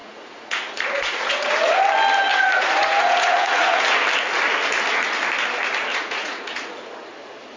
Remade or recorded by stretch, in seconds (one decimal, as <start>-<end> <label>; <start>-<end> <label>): 0.0-1.8 remade; 1.8-2.3 recorded; 2.3-3.8 remade; 3.8-5.9 recorded; 5.9-6.7 remade; 6.7-7.6 recorded

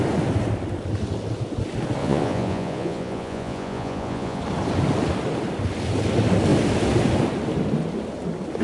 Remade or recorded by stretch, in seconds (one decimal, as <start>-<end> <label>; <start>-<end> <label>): 0.0-2.0 recorded; 2.0-4.4 remade; 4.4-8.6 recorded

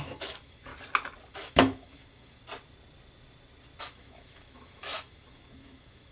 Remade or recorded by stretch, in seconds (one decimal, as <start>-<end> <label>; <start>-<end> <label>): 0.0-0.7 remade; 0.7-1.3 recorded; 1.3-2.4 remade; 2.4-3.8 recorded; 3.8-6.1 remade

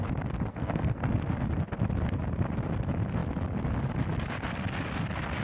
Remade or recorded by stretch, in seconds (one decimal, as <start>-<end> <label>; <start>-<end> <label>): 0.0-0.5 recorded; 0.5-1.1 remade; 1.1-5.4 recorded

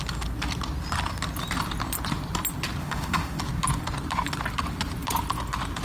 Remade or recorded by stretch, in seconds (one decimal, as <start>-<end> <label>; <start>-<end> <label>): 0.0-2.8 recorded; 2.8-3.4 remade; 3.4-5.8 recorded

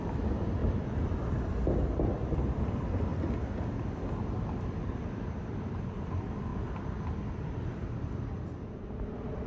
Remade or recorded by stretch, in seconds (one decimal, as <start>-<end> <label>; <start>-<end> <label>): 0.0-3.1 remade; 3.1-4.5 recorded; 4.5-9.5 remade

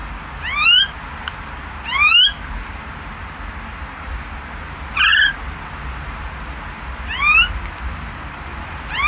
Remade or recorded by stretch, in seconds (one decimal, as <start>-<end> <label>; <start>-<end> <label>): 0.0-9.1 recorded

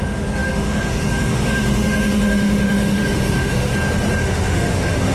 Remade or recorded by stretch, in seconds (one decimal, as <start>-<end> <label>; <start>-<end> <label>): 0.0-3.7 remade; 3.7-4.2 recorded; 4.2-5.1 remade